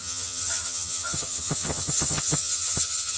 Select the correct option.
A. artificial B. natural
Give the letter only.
A